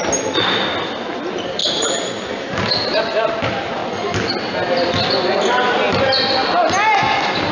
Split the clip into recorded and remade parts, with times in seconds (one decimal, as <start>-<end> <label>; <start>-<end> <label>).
0.0-1.6 recorded; 1.6-3.0 remade; 3.0-7.5 recorded